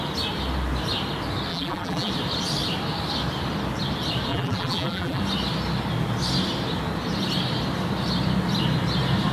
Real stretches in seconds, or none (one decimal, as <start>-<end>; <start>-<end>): 0.0-1.5; 2.1-4.3; 5.2-9.3